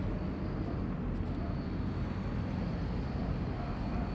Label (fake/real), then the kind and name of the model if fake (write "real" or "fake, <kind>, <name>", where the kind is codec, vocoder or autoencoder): real